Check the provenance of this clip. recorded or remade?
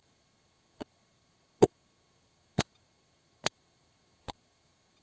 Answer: remade